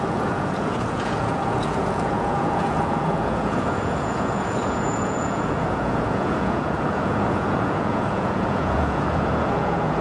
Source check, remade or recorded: remade